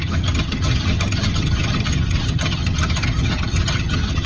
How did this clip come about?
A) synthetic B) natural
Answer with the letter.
A